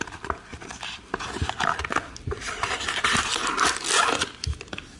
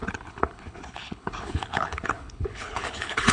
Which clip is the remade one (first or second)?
second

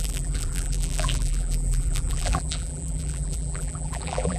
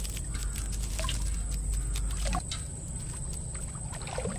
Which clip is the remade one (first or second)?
first